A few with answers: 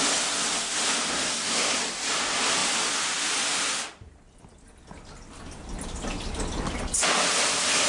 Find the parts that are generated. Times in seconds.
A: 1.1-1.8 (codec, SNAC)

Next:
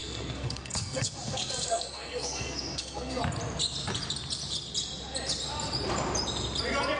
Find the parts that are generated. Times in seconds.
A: 0.0-3.2 (codec, SNAC)

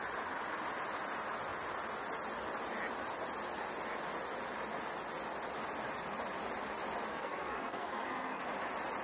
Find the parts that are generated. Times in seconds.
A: 7.1-8.4 (codec, SNAC)

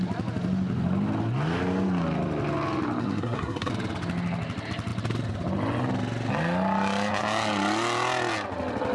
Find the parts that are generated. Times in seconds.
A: 3.0-3.7 (codec, SNAC)

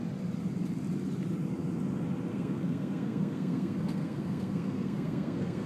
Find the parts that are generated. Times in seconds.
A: 2.3-5.7 (codec, SNAC)

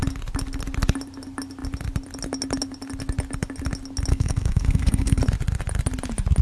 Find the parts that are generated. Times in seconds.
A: 4.1-5.2 (codec, SNAC)

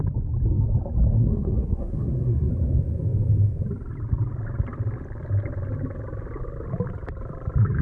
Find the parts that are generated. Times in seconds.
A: 1.1-2.5 (codec, SNAC)

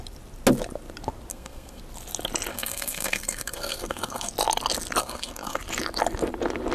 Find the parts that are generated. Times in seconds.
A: 1.3-1.8 (codec, SNAC); 2.5-4.3; 5.0-5.6